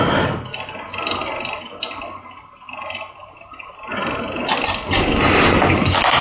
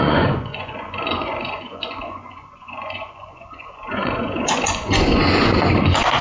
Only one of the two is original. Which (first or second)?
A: first